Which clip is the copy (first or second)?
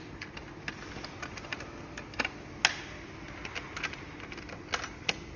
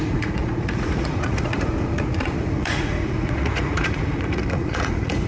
second